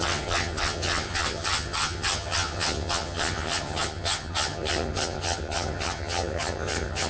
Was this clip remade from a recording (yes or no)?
yes